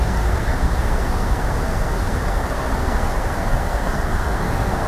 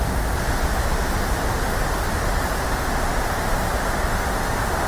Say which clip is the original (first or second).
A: second